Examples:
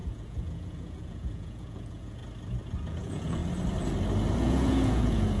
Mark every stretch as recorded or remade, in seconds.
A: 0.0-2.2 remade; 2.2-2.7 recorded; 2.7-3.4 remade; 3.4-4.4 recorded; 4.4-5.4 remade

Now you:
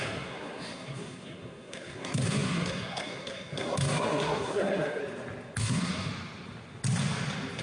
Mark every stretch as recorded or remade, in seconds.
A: 0.0-5.0 remade; 5.0-5.6 recorded; 5.6-6.1 remade; 6.1-7.6 recorded

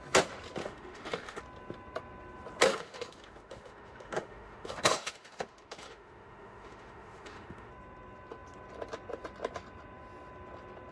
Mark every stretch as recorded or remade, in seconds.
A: 0.0-0.6 recorded; 0.6-1.4 remade; 1.4-2.7 recorded; 2.7-7.7 remade; 7.7-10.9 recorded

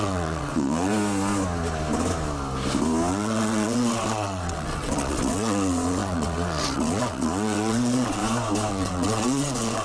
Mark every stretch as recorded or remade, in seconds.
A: 0.0-0.9 remade; 0.9-3.1 recorded; 3.1-8.2 remade; 8.2-8.7 recorded; 8.7-9.8 remade

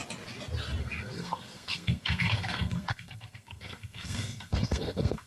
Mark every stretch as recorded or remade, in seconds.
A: 0.0-0.8 recorded; 0.8-5.3 remade

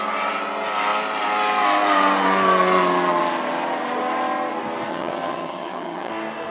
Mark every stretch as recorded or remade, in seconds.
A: 0.0-4.9 recorded; 4.9-6.1 remade; 6.1-6.5 recorded

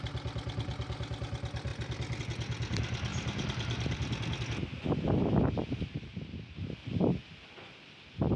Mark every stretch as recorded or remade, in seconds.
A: 0.0-3.1 recorded; 3.1-4.4 remade; 4.4-8.4 recorded